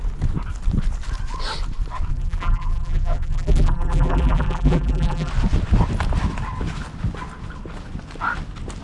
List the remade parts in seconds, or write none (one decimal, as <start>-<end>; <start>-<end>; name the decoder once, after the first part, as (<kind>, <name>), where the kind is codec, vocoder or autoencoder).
2.1-5.3 (vocoder, BigVGAN v2)